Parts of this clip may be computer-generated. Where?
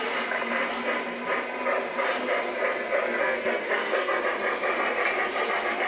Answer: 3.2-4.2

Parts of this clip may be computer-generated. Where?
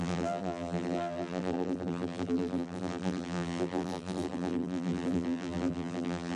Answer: 0.0-6.4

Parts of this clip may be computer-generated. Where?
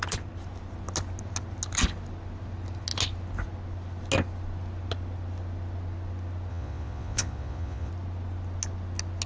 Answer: 6.5-7.9